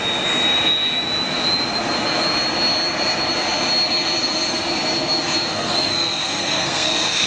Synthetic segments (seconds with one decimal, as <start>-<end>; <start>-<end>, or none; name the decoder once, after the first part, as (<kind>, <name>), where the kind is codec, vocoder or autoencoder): 5.5-7.3 (codec, SNAC)